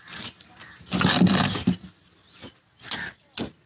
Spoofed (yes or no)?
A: no